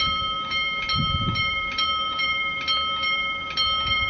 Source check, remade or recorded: remade